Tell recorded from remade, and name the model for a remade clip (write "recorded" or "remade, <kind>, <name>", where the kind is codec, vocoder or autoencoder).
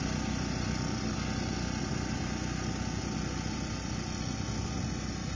recorded